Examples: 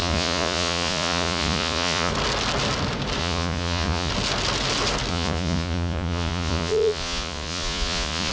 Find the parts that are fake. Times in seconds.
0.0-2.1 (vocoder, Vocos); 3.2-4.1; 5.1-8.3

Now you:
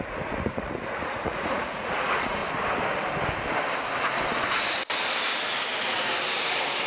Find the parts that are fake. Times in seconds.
0.0-2.4 (vocoder, Vocos); 6.5-6.9

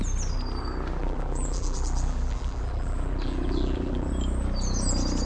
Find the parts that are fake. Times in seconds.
1.0-4.1 (vocoder, BigVGAN v2)